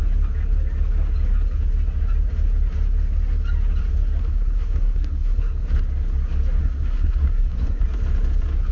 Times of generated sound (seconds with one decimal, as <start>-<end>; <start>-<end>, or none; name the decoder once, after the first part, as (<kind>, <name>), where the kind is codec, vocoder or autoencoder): 4.2-5.8 (codec, SNAC); 6.6-7.8